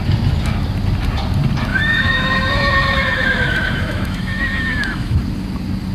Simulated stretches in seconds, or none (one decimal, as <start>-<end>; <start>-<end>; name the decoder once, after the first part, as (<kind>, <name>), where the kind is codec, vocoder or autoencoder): 1.7-5.2 (autoencoder, DAC-VAE)

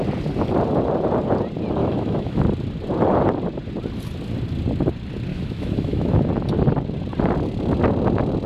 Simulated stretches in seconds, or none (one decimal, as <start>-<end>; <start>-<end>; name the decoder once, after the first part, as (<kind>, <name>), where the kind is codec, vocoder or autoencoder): 1.8-2.4 (autoencoder, DAC-VAE); 5.3-6.3

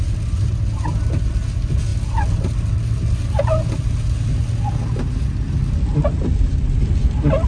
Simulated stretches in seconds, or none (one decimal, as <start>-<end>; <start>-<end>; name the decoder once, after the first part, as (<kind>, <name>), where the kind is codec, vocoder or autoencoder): none

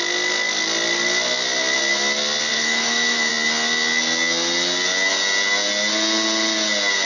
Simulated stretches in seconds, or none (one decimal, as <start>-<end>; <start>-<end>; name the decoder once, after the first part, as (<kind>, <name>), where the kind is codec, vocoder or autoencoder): 2.5-3.3 (autoencoder, DAC-VAE)

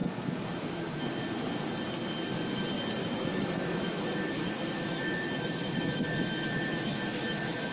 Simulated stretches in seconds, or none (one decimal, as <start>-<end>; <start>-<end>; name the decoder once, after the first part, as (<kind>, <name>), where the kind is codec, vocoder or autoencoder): 0.0-1.0 (autoencoder, DAC-VAE); 3.0-7.7